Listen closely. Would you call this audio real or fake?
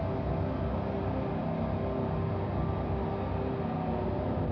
real